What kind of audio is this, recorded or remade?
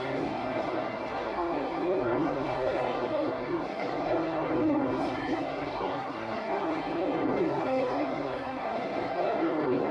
remade